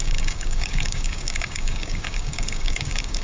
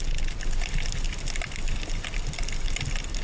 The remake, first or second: first